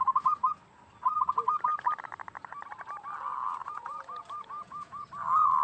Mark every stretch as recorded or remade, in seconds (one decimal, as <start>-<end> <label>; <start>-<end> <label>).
0.0-3.6 recorded; 3.6-5.1 remade; 5.1-5.6 recorded